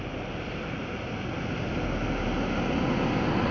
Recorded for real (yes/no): yes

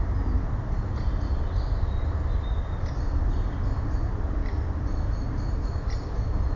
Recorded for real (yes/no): yes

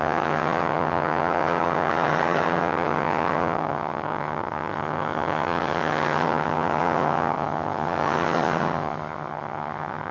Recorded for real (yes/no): no